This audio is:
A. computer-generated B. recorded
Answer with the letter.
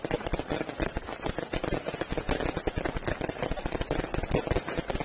B